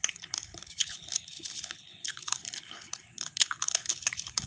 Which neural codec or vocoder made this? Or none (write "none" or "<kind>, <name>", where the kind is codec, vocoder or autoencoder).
codec, HILCodec